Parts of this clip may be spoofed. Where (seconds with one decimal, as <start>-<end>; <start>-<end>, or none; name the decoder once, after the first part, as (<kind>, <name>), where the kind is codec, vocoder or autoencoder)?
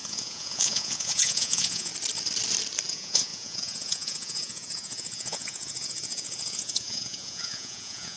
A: 0.0-1.9 (vocoder, Vocos); 2.9-8.2